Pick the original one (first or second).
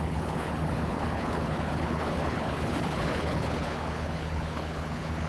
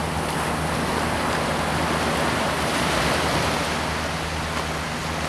second